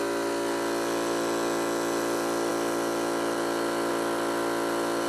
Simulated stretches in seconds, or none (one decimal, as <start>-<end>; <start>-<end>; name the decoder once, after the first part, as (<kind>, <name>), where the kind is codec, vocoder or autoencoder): none